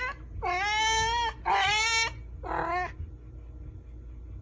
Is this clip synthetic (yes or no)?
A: no